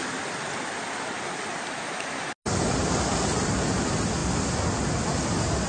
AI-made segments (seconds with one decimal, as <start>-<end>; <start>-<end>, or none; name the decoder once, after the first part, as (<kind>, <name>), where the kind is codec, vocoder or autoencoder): none